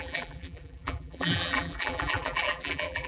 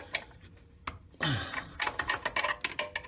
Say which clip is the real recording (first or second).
second